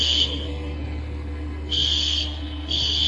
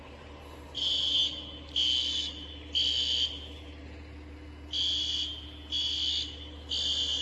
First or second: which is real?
second